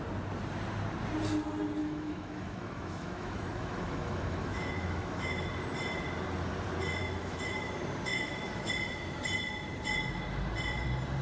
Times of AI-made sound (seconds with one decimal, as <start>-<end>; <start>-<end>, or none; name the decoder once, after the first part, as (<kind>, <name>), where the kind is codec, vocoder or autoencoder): 1.8-5.5 (autoencoder, DAC-VAE); 7.0-7.7; 8.1-8.7